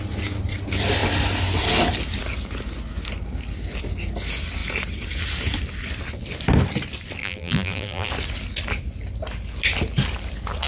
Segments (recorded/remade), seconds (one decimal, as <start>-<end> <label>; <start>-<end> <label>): 0.0-7.2 recorded; 7.2-8.1 remade; 8.1-10.7 recorded